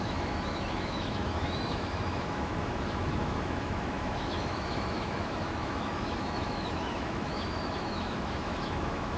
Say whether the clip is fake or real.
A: fake